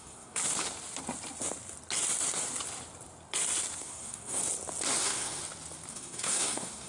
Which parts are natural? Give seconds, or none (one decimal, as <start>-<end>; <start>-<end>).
0.4-3.8; 4.4-5.0; 5.4-5.9